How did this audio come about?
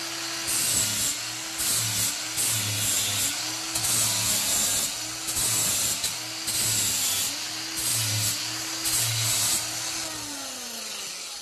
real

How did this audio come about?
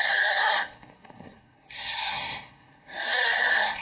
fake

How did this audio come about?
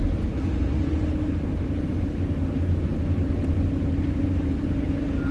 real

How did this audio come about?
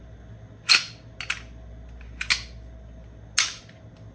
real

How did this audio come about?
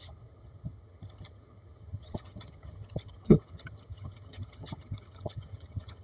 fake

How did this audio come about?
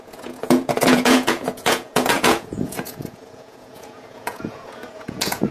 fake